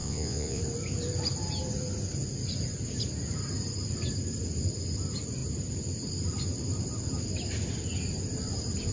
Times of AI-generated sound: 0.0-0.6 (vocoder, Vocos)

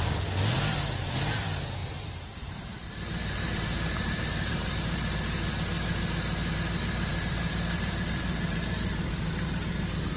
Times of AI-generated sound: 1.8-4.7 (vocoder, BigVGAN v2); 7.1-9.7